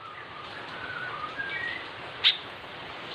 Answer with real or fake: fake